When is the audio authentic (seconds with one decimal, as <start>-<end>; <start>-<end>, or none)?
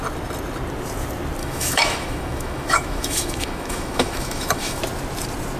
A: 0.0-1.4; 4.8-5.6